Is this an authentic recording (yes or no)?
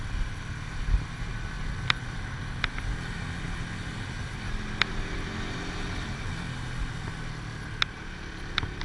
yes